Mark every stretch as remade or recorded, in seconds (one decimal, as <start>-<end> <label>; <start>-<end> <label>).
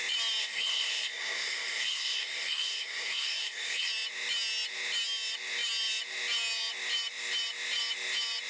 0.0-0.4 recorded; 0.4-3.9 remade; 3.9-8.5 recorded